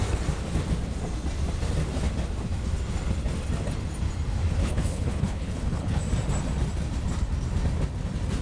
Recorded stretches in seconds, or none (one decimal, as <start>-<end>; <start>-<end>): 0.0-4.6; 6.0-8.4